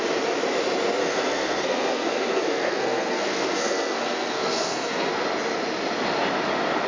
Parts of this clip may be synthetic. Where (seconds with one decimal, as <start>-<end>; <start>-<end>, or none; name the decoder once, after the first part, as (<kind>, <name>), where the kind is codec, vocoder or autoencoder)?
1.0-5.1 (codec, SNAC)